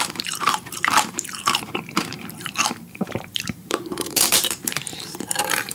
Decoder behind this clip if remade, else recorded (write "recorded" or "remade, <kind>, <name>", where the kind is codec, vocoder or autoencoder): remade, vocoder, BigVGAN v2